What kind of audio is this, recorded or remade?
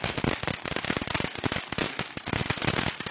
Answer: recorded